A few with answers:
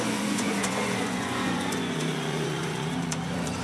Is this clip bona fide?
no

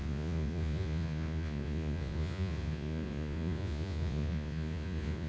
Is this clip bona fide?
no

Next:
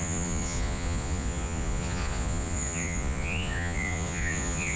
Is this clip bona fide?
no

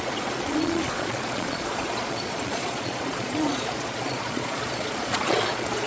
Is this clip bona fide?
no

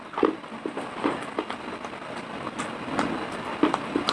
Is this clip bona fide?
yes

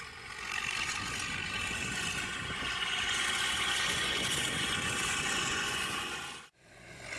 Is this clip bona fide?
no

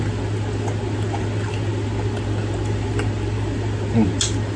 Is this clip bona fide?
yes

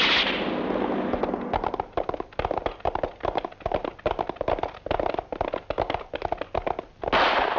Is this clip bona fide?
yes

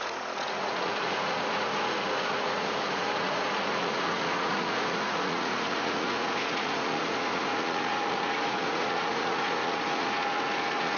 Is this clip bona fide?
no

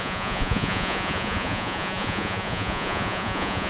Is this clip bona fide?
no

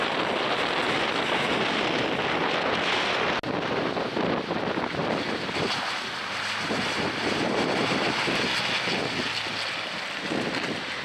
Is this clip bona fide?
yes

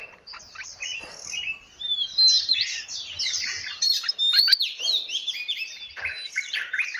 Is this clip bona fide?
yes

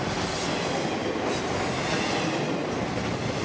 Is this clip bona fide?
yes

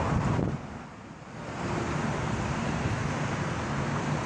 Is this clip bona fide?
yes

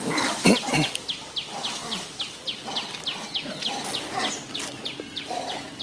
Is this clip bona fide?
yes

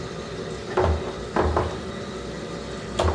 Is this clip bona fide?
yes